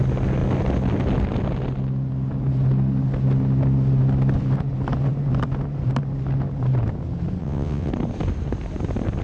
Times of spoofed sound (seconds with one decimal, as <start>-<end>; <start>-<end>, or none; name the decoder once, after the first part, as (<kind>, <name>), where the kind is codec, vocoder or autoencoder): 7.4-7.9 (vocoder, WaveNeXt)